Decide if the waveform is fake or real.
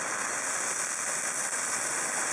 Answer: real